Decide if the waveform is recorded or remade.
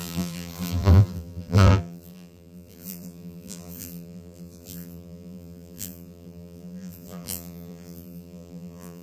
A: remade